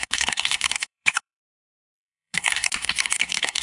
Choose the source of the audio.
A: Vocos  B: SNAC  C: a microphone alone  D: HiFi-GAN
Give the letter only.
B